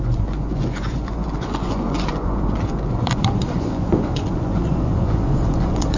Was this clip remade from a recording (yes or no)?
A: yes